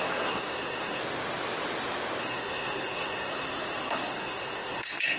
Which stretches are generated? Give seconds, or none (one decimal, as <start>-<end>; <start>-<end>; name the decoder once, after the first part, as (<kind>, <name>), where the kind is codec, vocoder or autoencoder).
0.0-1.0 (codec, SNAC); 2.2-5.2